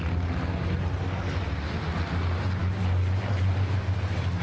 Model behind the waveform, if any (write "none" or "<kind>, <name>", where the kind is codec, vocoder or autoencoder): none